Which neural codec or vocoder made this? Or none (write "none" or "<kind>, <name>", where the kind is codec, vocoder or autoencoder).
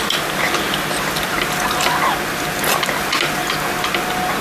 none